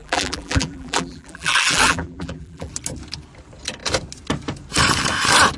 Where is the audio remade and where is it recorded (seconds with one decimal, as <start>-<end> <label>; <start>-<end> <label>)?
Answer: 0.0-2.7 remade; 2.7-5.6 recorded